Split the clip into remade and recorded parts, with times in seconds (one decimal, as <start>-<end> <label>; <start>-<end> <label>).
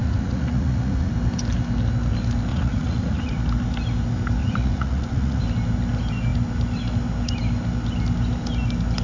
0.0-1.1 remade; 1.1-2.5 recorded; 2.5-3.3 remade; 3.3-4.4 recorded; 4.4-5.4 remade; 5.4-9.0 recorded